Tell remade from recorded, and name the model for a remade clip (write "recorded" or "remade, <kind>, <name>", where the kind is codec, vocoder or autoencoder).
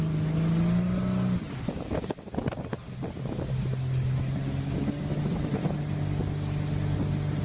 recorded